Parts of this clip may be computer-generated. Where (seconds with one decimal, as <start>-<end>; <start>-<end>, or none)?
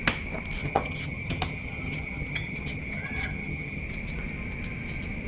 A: 0.6-3.8